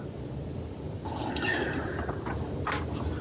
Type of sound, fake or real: real